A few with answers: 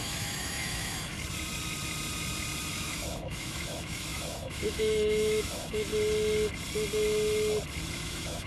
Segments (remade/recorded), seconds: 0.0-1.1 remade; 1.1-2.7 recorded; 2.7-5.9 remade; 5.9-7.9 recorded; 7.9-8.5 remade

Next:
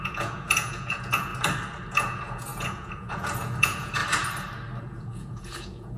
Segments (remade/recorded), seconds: 0.0-1.3 remade; 1.3-1.9 recorded; 1.9-4.0 remade; 4.0-4.8 recorded; 4.8-6.0 remade

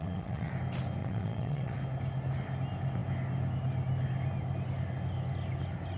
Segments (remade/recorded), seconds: 0.0-0.5 remade; 0.5-1.0 recorded; 1.0-1.8 remade; 1.8-6.0 recorded

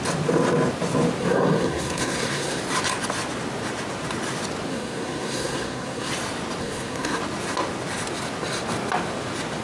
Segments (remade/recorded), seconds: 0.0-1.2 recorded; 1.2-2.6 remade; 2.6-4.7 recorded; 4.7-6.1 remade; 6.1-6.6 recorded; 6.6-7.2 remade; 7.2-9.6 recorded

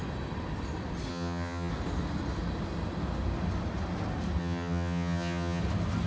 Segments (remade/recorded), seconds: 0.0-1.1 recorded; 1.1-1.7 remade; 1.7-4.4 recorded; 4.4-5.6 remade; 5.6-6.1 recorded

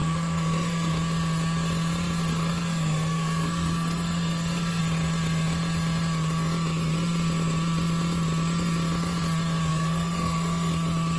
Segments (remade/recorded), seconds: 0.0-0.9 remade; 0.9-2.3 recorded; 2.3-4.8 remade; 4.8-9.7 recorded; 9.7-10.7 remade; 10.7-11.2 recorded